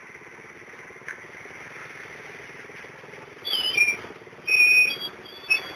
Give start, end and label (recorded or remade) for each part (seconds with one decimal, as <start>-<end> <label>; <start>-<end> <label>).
0.0-5.8 recorded